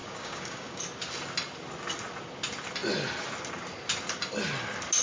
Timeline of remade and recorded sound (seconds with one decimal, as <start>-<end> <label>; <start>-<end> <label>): 0.0-0.8 remade; 0.8-5.0 recorded